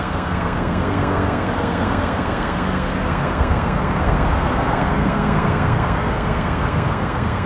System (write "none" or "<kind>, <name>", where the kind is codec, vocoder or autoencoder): codec, SNAC